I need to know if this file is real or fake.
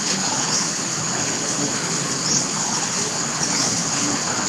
fake